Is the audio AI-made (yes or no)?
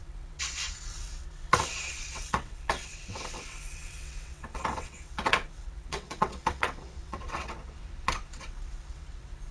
yes